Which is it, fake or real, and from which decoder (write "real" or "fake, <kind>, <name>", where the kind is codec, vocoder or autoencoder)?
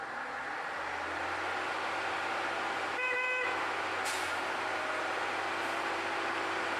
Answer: fake, vocoder, BigVGAN v2